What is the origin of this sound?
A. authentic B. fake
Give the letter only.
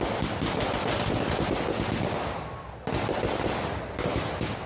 A